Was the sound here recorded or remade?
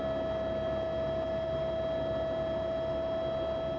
recorded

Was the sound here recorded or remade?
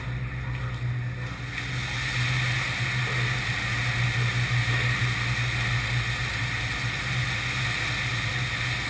recorded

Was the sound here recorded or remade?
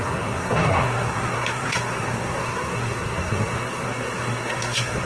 remade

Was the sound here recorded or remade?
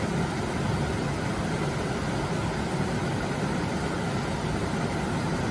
recorded